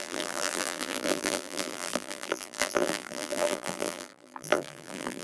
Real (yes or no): no